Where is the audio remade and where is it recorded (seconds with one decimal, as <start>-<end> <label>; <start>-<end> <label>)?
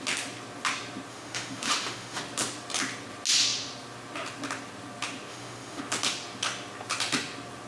0.0-1.1 recorded; 1.1-2.2 remade; 2.2-5.3 recorded; 5.3-5.8 remade; 5.8-7.7 recorded